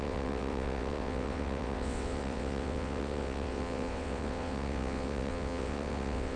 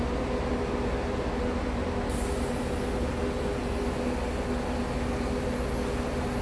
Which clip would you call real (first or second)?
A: second